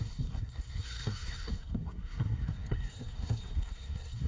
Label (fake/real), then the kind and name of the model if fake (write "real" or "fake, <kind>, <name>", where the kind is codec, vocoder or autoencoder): fake, codec, SNAC